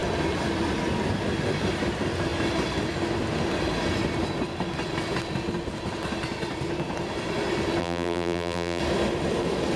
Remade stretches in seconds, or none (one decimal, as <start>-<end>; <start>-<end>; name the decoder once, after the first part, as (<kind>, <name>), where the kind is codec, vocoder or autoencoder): 7.8-8.8 (vocoder, BigVGAN v2)